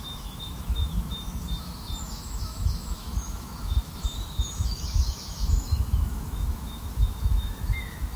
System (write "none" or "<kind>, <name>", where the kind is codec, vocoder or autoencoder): autoencoder, DAC-VAE